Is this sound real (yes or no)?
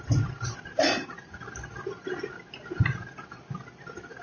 yes